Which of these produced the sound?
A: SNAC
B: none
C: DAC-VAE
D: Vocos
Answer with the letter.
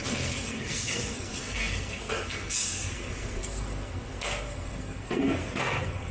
A